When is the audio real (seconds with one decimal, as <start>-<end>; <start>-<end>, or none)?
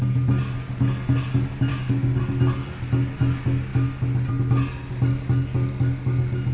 0.0-1.7; 2.2-6.5